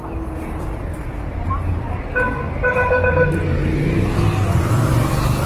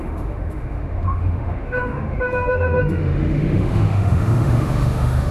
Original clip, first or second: first